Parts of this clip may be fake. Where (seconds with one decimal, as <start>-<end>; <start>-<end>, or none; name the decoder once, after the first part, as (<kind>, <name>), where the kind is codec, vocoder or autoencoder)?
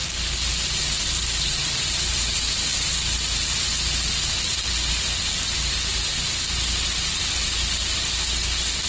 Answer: none